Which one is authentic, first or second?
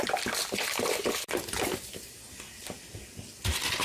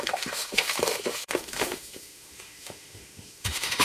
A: first